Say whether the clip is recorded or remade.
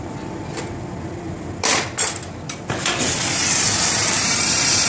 remade